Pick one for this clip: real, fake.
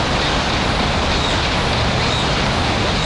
real